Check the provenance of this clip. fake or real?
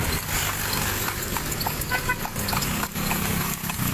fake